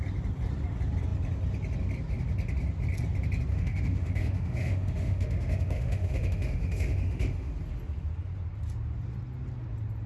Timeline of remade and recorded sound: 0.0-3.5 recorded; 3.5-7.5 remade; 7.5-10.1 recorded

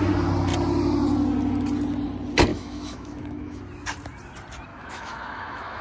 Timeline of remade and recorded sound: 0.0-2.5 recorded; 2.5-3.6 remade; 3.6-4.7 recorded; 4.7-5.8 remade

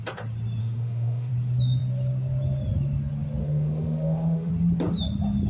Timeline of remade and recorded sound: 0.0-0.6 recorded; 0.6-1.3 remade; 1.3-3.4 recorded; 3.4-4.5 remade; 4.5-5.5 recorded

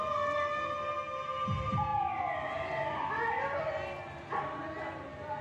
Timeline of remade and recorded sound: 0.0-5.4 recorded

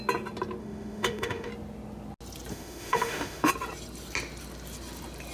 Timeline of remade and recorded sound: 0.0-0.6 recorded; 0.6-1.5 remade; 1.5-2.5 recorded; 2.5-3.5 remade; 3.5-5.3 recorded

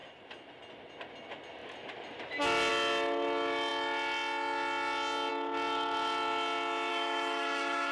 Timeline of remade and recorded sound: 0.0-6.9 recorded; 6.9-7.9 remade